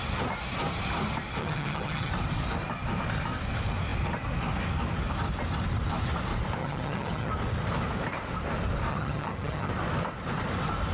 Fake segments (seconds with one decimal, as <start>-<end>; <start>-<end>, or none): 1.4-2.1; 6.6-7.3; 8.9-9.7